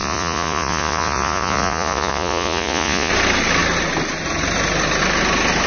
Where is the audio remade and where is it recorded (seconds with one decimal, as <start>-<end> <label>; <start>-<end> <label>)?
0.0-3.1 remade; 3.1-5.7 recorded